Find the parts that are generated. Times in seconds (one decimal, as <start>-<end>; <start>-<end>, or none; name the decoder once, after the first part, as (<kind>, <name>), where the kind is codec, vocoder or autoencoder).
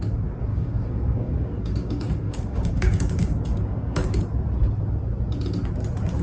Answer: 0.5-4.2 (codec, DAC)